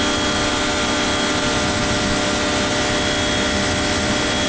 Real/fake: real